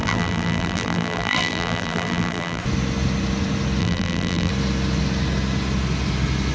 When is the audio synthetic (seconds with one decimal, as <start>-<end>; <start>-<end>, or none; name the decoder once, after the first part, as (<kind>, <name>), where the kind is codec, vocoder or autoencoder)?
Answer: 0.0-2.6 (vocoder, BigVGAN v2); 3.8-4.5